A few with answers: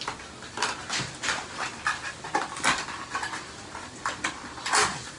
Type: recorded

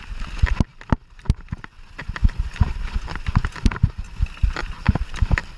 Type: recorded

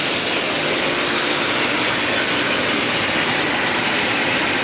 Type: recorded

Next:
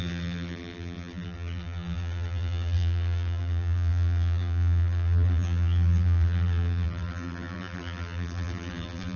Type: remade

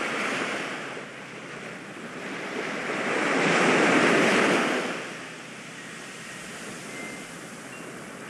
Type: recorded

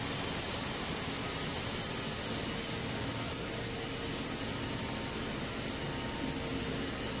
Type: recorded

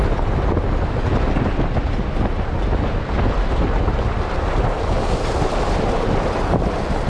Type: recorded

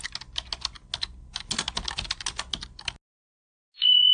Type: recorded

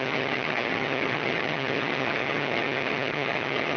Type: remade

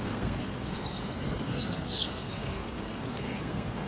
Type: remade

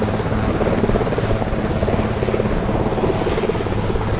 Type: recorded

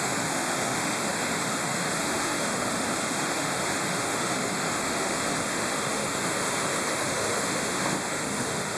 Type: remade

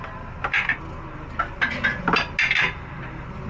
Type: recorded